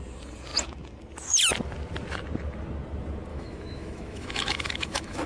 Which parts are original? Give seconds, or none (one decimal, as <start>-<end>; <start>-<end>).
0.0-3.3